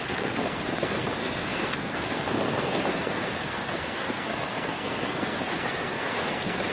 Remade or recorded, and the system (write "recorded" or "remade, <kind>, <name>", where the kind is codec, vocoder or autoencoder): remade, codec, SNAC